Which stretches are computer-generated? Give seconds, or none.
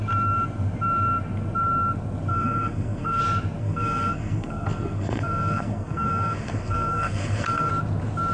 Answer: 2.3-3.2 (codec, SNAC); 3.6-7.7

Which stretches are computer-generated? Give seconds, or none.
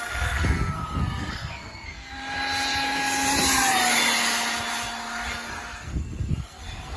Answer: 0.0-2.1 (codec, SNAC); 5.3-7.0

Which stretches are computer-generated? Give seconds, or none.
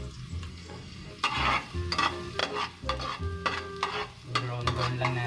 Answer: 0.5-1.1 (codec, SNAC)